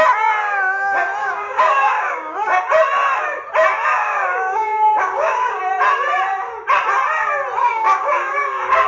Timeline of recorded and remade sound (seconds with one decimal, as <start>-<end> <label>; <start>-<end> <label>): 0.0-1.2 recorded; 1.2-2.6 remade; 2.6-3.7 recorded; 3.7-5.6 remade; 5.6-7.6 recorded; 7.6-8.9 remade